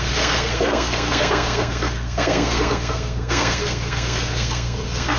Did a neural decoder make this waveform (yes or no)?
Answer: yes